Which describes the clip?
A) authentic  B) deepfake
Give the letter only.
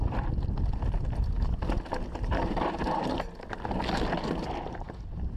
B